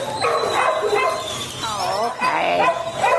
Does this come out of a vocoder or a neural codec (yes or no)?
no